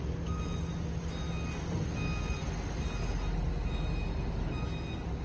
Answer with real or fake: real